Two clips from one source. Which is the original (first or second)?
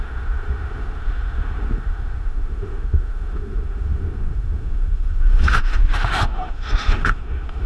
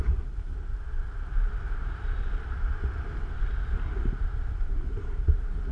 second